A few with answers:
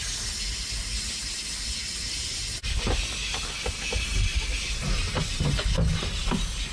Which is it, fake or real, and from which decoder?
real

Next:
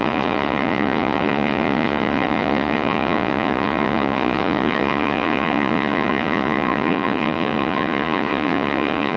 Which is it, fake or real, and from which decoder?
fake, vocoder, Vocos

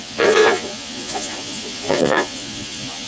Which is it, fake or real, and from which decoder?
fake, vocoder, Vocos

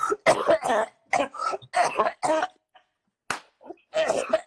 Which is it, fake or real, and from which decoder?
real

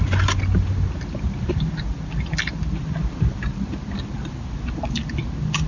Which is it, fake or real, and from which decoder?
real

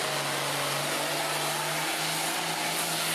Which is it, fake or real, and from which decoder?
real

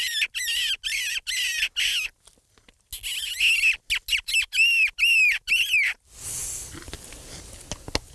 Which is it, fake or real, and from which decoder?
real